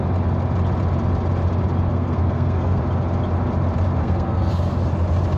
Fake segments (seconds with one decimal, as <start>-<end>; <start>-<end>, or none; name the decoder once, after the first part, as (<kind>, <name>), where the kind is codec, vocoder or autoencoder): 1.9-2.8 (codec, SNAC); 4.0-4.5